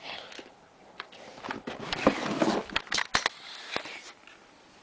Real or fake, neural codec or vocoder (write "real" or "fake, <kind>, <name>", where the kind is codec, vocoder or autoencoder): real